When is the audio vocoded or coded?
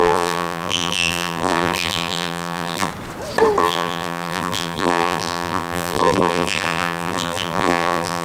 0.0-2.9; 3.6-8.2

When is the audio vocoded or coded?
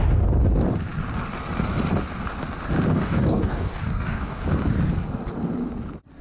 2.9-4.4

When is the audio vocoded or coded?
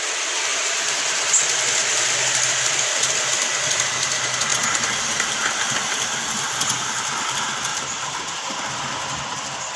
0.5-3.1; 7.7-8.6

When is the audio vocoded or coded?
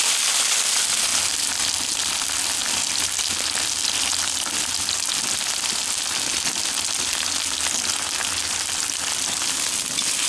none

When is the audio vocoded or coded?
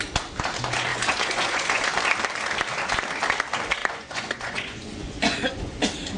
0.9-1.8; 3.8-5.7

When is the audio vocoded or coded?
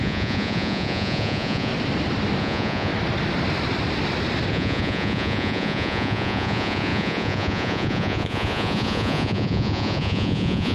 0.0-1.7; 2.4-2.9; 4.5-10.7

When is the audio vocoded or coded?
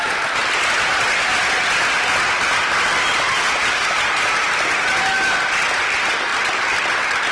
6.3-6.8